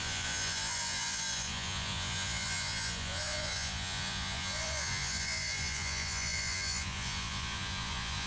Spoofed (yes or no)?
yes